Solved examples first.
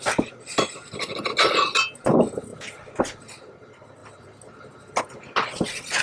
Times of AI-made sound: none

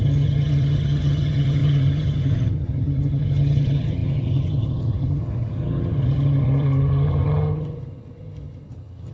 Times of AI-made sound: 0.0-9.1 (vocoder, HiFi-GAN)

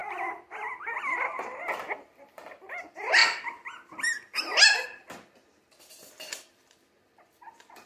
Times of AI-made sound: 1.0-3.2 (vocoder, BigVGAN v2); 6.6-7.9

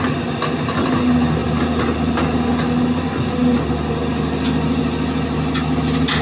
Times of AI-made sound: none

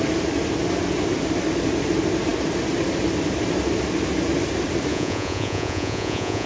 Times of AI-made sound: 4.9-6.5 (vocoder, Vocos)